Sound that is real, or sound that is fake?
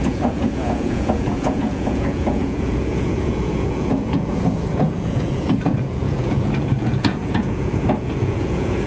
fake